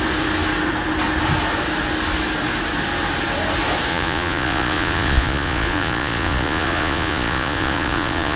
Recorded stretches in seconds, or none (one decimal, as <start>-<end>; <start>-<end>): 0.0-3.9